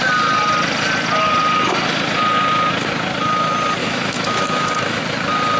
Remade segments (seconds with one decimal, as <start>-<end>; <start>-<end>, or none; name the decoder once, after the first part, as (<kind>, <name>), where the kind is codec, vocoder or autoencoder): 3.8-5.0 (autoencoder, DAC-VAE)